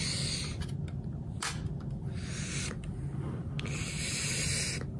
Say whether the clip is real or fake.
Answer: real